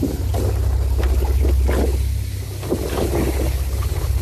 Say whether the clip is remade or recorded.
recorded